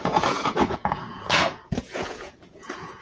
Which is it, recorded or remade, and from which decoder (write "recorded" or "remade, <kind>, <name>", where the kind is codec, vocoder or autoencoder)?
remade, vocoder, Vocos